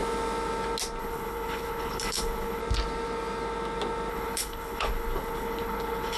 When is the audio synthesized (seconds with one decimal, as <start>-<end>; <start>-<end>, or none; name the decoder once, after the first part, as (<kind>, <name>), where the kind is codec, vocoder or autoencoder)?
1.0-2.6 (codec, HILCodec); 4.1-6.2